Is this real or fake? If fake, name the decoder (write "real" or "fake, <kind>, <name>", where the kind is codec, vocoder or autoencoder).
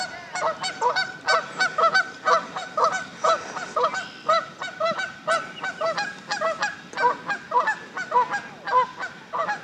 real